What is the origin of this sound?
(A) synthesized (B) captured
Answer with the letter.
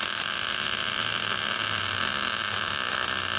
B